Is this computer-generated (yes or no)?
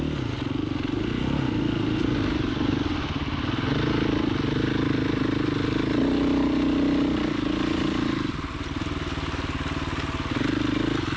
no